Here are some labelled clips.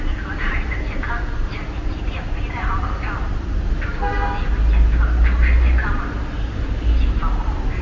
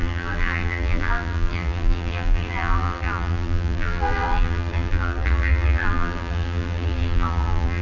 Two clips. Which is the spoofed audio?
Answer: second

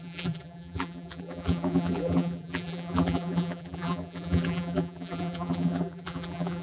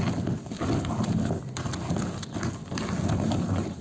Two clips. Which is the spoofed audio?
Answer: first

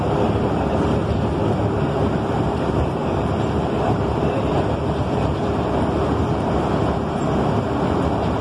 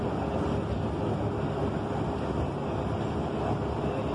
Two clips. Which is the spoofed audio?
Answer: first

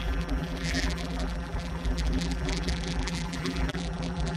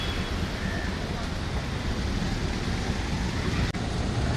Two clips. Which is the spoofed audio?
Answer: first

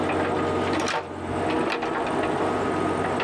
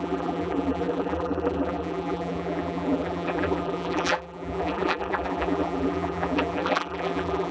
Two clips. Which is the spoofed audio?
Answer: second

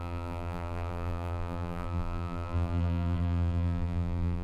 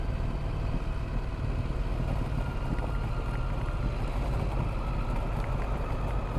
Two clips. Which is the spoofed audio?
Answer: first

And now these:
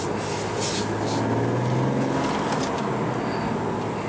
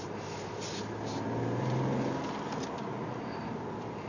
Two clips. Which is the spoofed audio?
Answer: second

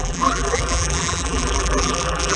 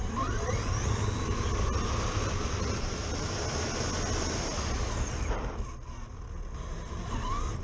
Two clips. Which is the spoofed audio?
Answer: first